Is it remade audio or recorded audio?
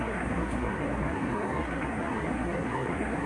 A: remade